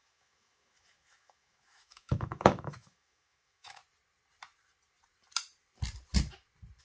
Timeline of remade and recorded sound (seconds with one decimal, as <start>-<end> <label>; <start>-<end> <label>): 0.0-3.8 remade; 3.8-6.8 recorded